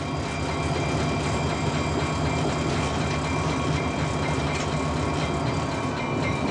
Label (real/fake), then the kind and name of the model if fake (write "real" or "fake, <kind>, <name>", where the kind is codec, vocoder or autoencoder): real